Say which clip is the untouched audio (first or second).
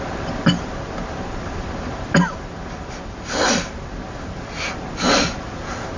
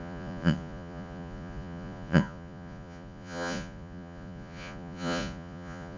first